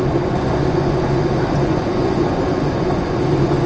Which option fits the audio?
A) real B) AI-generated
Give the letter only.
B